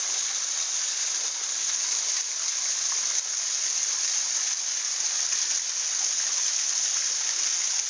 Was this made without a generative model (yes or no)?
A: yes